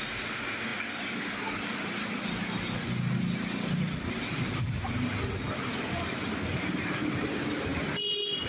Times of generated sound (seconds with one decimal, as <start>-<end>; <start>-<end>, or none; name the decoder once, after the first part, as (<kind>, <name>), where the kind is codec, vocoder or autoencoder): none